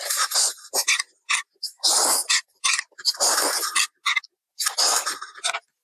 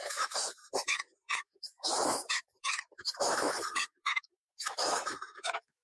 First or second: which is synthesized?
second